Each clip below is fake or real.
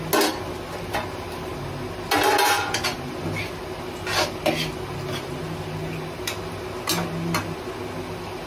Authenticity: real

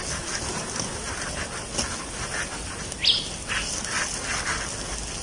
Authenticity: real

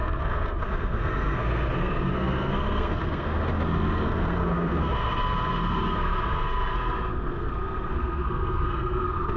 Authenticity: fake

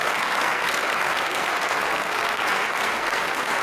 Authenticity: fake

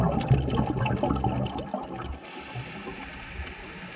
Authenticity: real